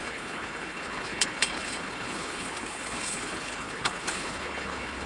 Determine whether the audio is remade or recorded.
remade